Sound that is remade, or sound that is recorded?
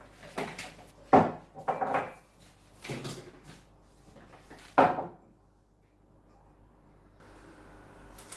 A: recorded